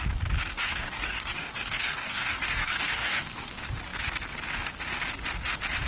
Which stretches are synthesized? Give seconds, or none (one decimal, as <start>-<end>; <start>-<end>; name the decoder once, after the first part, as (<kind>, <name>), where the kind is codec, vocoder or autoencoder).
0.7-3.5 (codec, DAC)